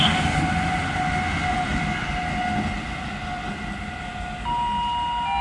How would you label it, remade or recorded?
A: recorded